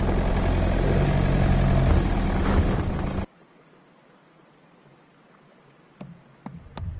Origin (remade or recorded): recorded